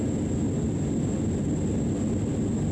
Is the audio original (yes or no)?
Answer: yes